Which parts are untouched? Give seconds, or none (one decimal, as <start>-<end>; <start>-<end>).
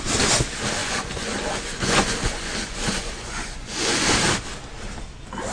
0.0-0.8; 4.1-5.5